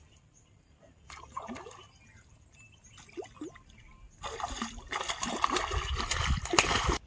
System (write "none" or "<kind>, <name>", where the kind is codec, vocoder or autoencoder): none